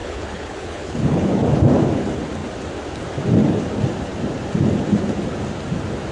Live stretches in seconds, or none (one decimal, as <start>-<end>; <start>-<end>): 1.4-6.1